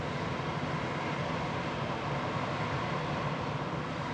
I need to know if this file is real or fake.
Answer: real